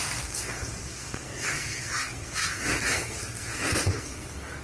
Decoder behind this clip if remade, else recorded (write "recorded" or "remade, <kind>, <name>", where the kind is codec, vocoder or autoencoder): remade, codec, SNAC